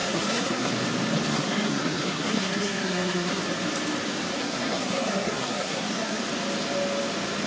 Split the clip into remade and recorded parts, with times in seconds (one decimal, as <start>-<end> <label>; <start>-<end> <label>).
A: 0.0-0.7 remade; 0.7-1.3 recorded; 1.3-3.4 remade; 3.4-4.4 recorded; 4.4-6.2 remade; 6.2-7.5 recorded